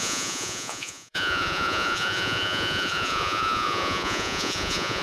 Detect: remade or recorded remade